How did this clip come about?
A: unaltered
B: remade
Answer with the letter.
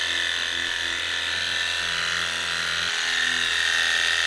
A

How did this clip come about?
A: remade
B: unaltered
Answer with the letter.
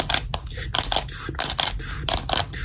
B